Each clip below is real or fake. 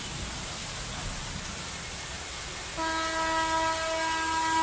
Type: real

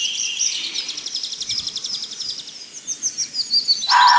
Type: real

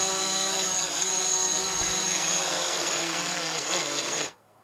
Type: fake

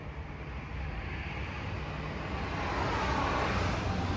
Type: real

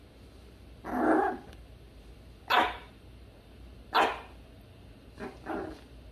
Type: real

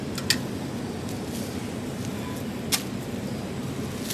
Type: real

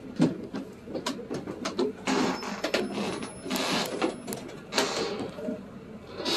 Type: real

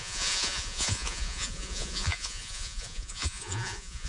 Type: fake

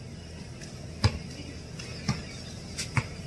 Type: real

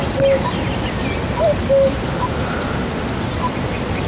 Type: real